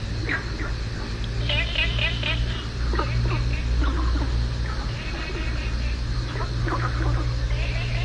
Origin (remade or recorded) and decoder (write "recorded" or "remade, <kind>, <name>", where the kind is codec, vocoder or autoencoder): recorded